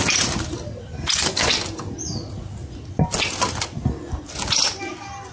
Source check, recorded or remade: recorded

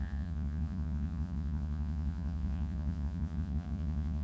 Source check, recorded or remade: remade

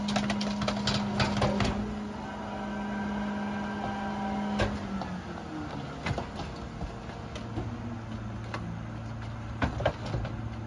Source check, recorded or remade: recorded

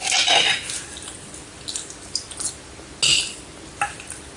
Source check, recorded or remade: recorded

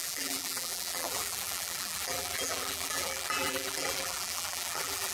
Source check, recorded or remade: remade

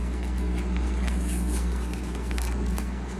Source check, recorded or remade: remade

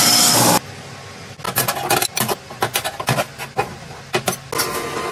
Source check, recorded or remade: recorded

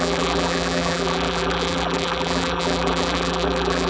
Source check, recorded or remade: remade